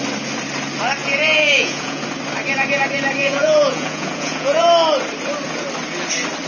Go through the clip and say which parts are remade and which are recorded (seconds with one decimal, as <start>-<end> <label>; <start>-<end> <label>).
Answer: 0.0-1.0 recorded; 1.0-2.0 remade; 2.0-3.2 recorded; 3.2-4.7 remade; 4.7-6.5 recorded